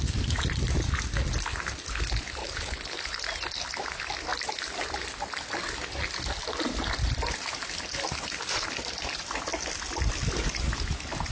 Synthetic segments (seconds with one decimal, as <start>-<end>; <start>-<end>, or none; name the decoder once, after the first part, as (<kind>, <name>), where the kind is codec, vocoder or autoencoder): 2.4-3.2 (codec, HILCodec)